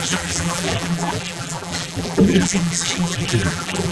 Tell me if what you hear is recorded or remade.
remade